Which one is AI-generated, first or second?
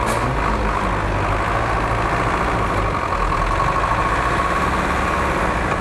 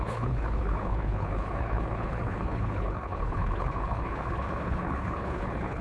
second